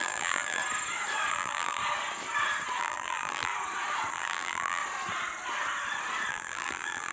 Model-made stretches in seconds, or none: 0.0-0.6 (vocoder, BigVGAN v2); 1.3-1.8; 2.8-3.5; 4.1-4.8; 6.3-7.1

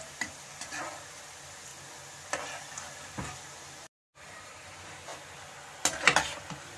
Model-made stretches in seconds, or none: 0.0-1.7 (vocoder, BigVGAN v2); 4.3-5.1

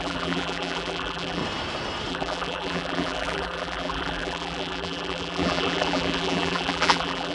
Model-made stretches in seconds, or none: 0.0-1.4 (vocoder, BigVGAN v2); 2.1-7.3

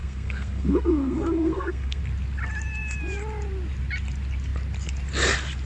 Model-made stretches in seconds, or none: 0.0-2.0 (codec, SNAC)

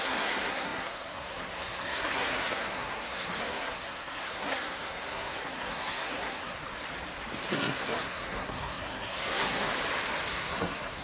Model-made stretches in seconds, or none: 0.0-6.6 (codec, SNAC); 7.5-9.7; 10.3-11.0

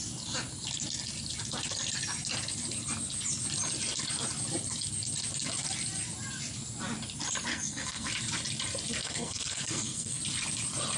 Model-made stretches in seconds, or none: 7.5-8.1 (codec, SNAC); 9.0-10.2